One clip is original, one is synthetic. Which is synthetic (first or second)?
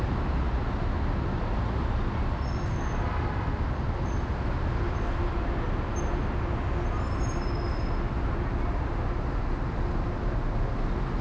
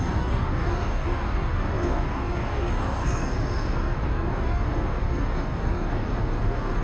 second